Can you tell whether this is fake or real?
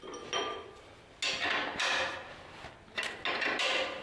real